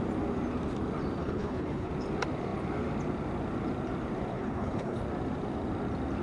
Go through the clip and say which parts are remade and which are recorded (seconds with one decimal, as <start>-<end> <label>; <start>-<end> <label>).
0.0-1.2 recorded; 1.2-1.9 remade; 1.9-4.3 recorded; 4.3-5.0 remade; 5.0-6.2 recorded

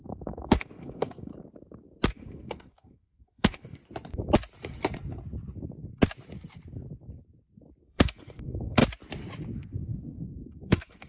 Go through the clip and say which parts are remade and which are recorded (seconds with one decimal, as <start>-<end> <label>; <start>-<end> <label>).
0.0-1.3 remade; 1.3-2.1 recorded; 2.1-3.8 remade; 3.8-7.8 recorded; 7.8-8.8 remade; 8.8-9.8 recorded; 9.8-11.1 remade

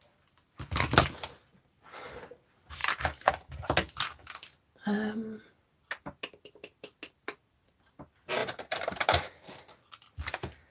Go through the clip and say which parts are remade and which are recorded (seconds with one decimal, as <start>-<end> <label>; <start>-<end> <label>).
0.0-2.8 recorded; 2.8-3.5 remade; 3.5-8.4 recorded; 8.4-9.5 remade; 9.5-10.7 recorded

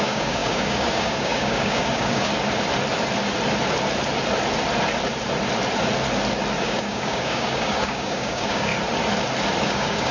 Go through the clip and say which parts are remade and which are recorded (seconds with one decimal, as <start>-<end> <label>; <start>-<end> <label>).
0.0-2.3 remade; 2.3-6.6 recorded; 6.6-8.7 remade; 8.7-9.6 recorded; 9.6-10.1 remade

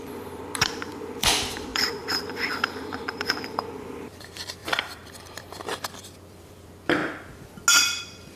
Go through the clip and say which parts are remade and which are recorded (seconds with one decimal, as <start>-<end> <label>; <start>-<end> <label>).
0.0-7.0 remade; 7.0-8.0 recorded; 8.0-8.4 remade

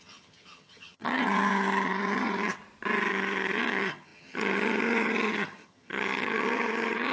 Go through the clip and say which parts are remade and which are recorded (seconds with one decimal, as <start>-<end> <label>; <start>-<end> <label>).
0.0-2.6 remade; 2.6-3.1 recorded; 3.1-7.1 remade

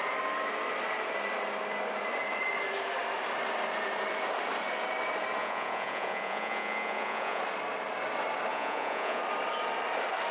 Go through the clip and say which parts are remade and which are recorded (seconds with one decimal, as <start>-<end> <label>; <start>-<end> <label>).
0.0-5.4 recorded; 5.4-7.4 remade; 7.4-8.5 recorded; 8.5-9.2 remade; 9.2-10.3 recorded